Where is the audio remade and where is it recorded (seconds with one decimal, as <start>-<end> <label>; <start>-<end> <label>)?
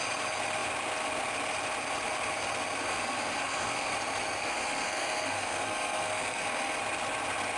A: 0.0-2.9 recorded; 2.9-3.9 remade; 3.9-4.4 recorded; 4.4-6.8 remade; 6.8-7.6 recorded